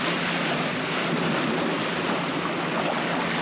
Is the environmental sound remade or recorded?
recorded